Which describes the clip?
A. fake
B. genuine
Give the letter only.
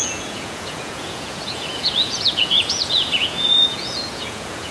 A